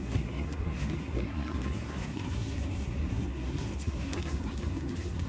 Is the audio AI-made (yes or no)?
yes